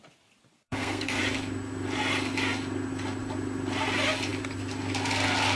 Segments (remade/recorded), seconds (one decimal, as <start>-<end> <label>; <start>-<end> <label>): 0.0-0.5 recorded; 0.5-1.2 remade; 1.2-5.6 recorded